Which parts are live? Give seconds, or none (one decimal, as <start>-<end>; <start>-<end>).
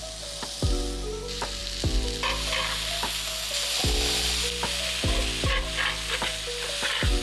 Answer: 0.0-7.2